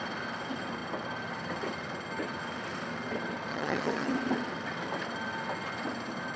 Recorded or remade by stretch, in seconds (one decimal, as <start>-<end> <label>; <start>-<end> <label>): 0.0-3.5 recorded; 3.5-4.1 remade; 4.1-6.4 recorded